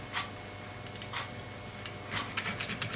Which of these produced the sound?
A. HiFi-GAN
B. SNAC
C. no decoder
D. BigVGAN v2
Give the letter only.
C